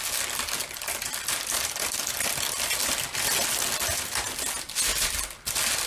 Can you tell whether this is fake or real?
real